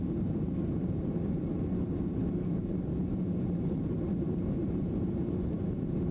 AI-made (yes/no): yes